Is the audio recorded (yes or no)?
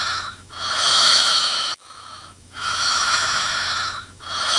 no